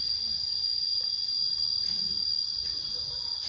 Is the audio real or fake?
real